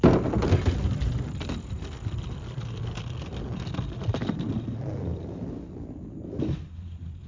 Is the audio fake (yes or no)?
no